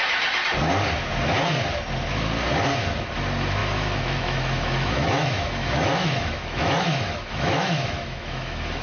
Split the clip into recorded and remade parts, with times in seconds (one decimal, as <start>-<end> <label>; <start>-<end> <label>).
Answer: 0.0-3.6 recorded; 3.6-8.8 remade